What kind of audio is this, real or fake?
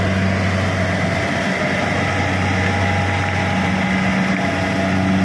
real